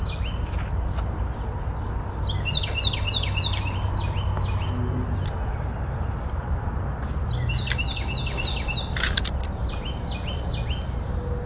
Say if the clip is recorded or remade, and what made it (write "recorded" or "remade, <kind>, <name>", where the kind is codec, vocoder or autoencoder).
recorded